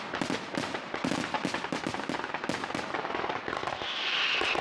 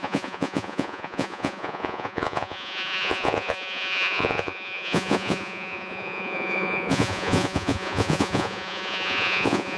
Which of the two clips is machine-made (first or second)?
second